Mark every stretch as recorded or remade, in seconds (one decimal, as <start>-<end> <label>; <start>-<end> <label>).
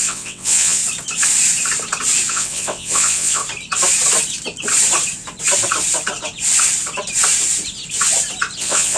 0.0-0.8 remade; 0.8-2.3 recorded; 2.3-3.4 remade; 3.4-8.6 recorded; 8.6-9.0 remade